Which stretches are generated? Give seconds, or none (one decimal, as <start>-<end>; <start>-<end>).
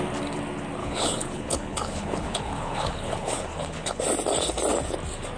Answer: 0.8-4.0